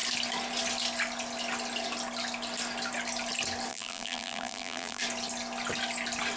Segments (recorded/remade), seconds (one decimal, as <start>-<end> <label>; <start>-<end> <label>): 0.0-3.7 recorded; 3.7-5.0 remade; 5.0-6.4 recorded